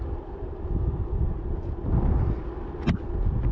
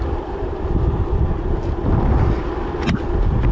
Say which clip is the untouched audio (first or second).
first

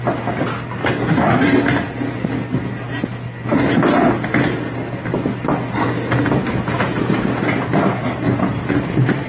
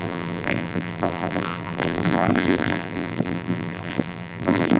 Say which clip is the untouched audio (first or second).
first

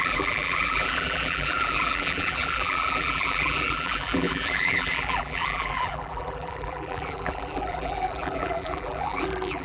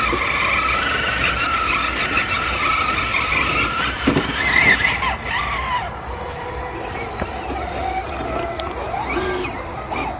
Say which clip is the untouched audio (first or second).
second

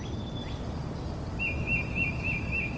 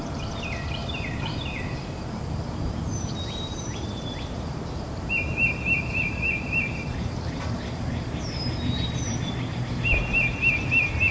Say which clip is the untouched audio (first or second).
first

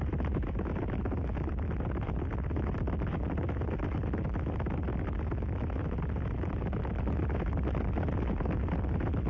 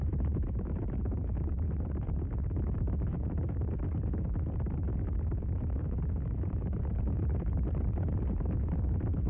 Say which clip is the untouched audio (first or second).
first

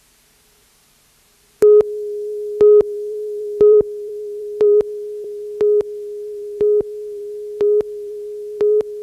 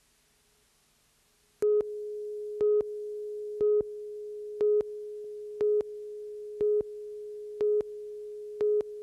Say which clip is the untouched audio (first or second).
second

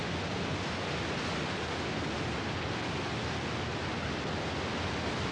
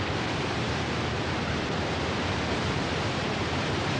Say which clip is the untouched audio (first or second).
first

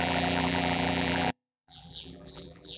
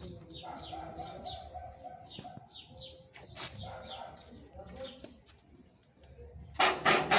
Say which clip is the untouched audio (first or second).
second